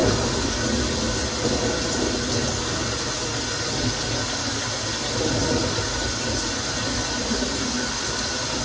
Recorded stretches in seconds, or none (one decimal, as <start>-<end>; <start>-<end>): 0.0-8.6